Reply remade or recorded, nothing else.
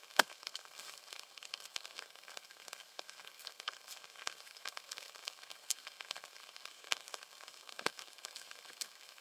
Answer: remade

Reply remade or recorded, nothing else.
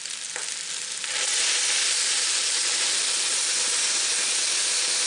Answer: recorded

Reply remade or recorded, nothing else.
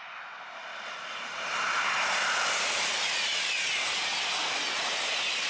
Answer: recorded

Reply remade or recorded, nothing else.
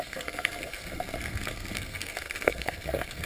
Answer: remade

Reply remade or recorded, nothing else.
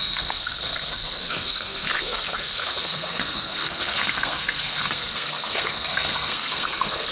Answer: remade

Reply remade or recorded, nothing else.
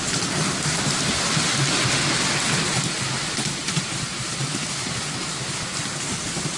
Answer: recorded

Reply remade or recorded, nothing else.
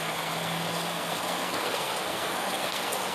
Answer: remade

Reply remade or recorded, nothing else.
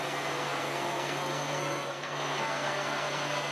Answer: remade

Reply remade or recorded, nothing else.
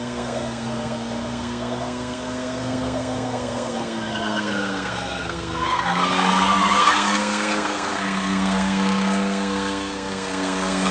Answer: remade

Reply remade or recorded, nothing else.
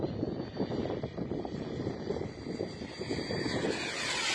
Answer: recorded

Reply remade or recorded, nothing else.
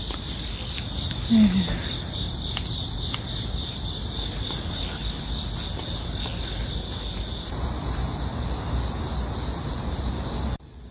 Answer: recorded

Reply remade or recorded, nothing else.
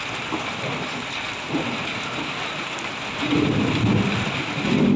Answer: recorded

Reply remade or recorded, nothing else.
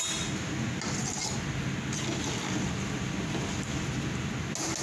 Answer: recorded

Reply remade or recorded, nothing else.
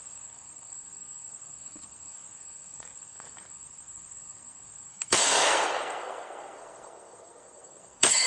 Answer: remade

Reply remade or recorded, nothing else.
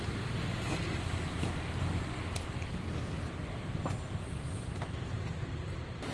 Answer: recorded